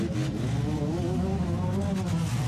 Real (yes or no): yes